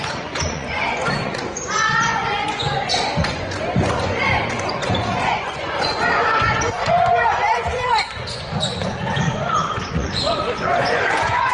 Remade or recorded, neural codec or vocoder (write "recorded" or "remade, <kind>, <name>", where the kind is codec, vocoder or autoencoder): remade, vocoder, Vocos